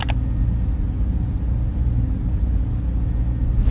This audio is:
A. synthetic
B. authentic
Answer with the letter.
B